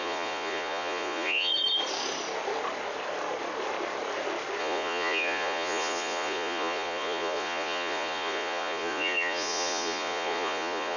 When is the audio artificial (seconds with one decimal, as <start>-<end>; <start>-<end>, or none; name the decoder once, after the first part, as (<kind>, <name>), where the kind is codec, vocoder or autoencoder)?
0.0-1.5 (vocoder, Vocos); 4.6-11.0